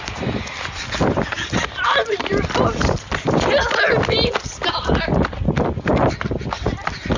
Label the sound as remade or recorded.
recorded